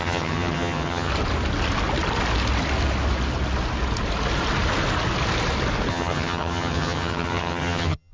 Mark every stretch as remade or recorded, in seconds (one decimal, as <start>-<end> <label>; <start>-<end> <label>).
0.0-1.1 remade; 1.1-5.9 recorded; 5.9-8.1 remade